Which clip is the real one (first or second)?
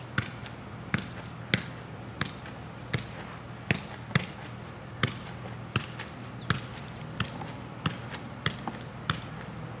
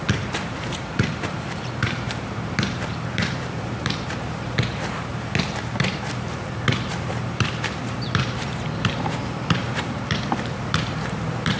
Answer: first